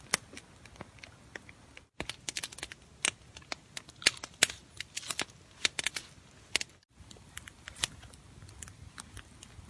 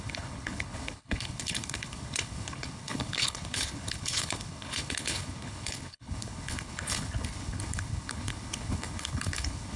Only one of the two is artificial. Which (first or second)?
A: second